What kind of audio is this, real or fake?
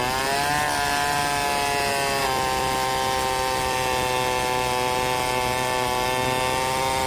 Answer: real